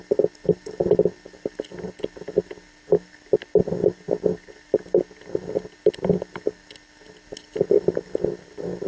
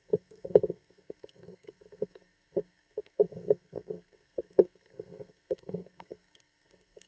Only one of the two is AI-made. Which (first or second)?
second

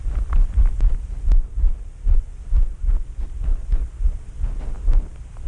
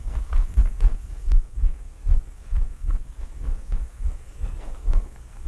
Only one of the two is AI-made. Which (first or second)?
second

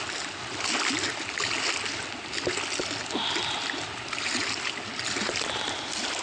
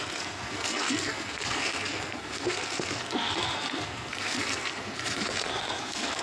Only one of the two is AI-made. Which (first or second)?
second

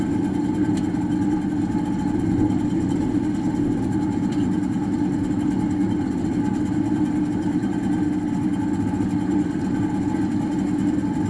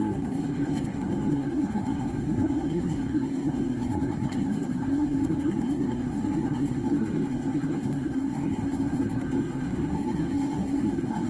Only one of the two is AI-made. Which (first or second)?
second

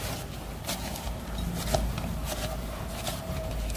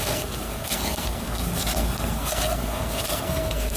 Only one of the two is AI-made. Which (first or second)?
second